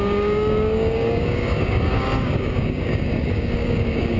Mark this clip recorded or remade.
remade